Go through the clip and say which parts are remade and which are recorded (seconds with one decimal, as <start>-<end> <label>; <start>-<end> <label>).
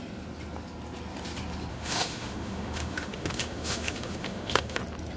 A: 0.0-1.7 recorded; 1.7-4.8 remade; 4.8-5.2 recorded